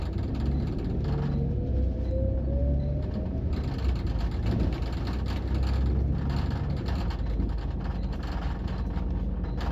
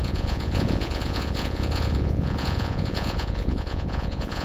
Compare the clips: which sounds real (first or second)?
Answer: first